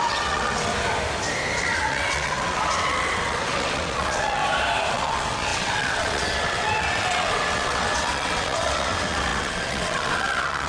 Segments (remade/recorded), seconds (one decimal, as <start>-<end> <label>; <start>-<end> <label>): 0.0-0.7 remade; 0.7-1.6 recorded; 1.6-4.4 remade; 4.4-4.9 recorded; 4.9-10.7 remade